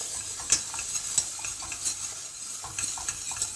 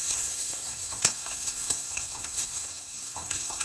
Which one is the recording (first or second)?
first